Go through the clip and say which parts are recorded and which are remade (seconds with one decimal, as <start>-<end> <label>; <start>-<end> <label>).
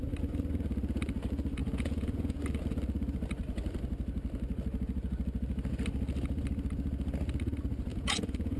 0.0-1.6 recorded; 1.6-2.4 remade; 2.4-7.9 recorded; 7.9-8.6 remade